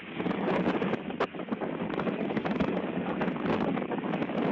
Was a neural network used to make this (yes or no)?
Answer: yes